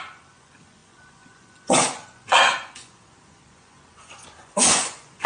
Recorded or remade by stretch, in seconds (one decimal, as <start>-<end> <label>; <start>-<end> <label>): 0.0-5.3 remade